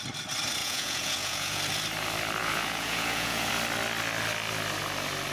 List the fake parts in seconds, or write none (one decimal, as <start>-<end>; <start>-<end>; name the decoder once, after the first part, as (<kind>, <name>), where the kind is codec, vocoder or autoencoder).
0.6-1.6 (vocoder, Vocos); 2.4-3.5